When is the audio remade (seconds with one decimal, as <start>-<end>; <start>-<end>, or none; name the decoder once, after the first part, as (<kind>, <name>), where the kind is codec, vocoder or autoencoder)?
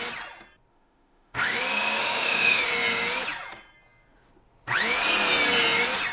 0.7-1.6 (autoencoder, DAC-VAE); 2.0-2.6